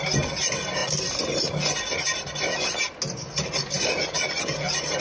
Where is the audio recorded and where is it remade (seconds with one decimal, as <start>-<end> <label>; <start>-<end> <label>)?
0.0-5.0 recorded